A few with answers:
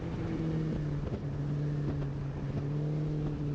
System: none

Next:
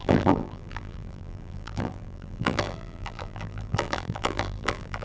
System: vocoder, BigVGAN v2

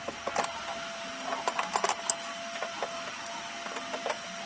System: none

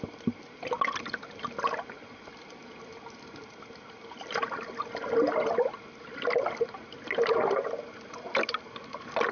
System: none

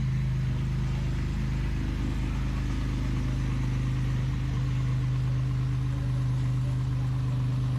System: none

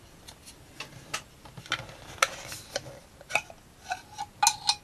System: none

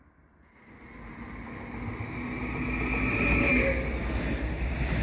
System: none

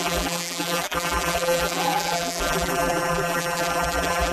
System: vocoder, BigVGAN v2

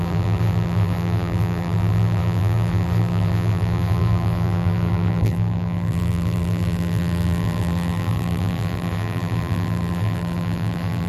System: vocoder, BigVGAN v2